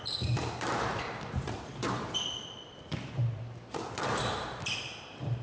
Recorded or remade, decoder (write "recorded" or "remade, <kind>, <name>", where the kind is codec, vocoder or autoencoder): remade, vocoder, BigVGAN v2